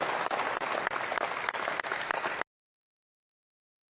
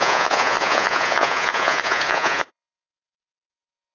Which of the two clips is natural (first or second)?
first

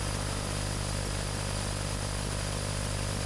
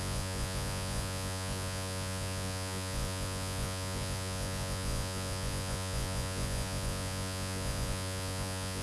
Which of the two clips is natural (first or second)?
first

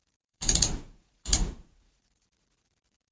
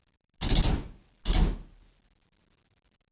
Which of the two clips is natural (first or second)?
second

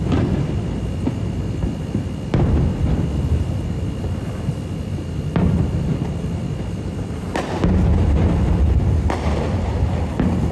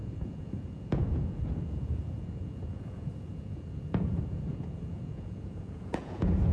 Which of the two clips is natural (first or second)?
first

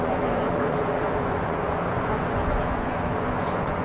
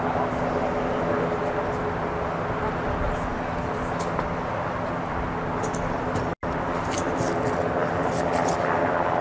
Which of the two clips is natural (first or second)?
second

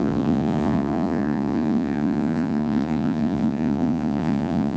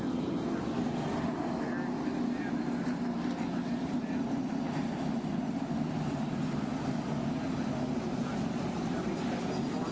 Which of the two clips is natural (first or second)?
second